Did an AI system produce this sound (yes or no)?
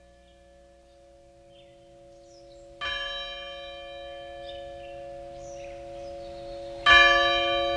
no